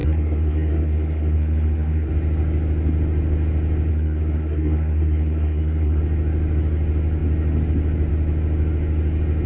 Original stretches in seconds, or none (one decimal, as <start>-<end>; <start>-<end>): 2.1-3.9; 6.0-9.5